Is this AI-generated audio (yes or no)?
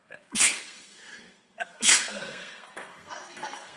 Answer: yes